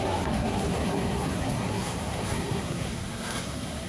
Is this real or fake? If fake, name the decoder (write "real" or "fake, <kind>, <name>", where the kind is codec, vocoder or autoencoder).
fake, codec, SNAC